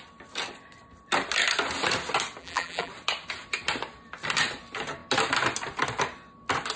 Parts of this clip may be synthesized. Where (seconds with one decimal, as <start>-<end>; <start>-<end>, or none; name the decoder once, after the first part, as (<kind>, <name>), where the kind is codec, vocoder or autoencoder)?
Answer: 2.4-2.9 (vocoder, BigVGAN v2)